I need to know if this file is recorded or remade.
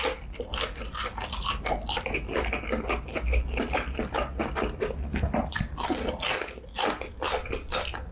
recorded